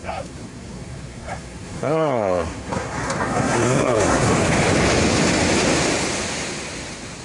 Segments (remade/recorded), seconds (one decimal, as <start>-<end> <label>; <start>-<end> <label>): 0.0-4.3 remade; 4.3-7.2 recorded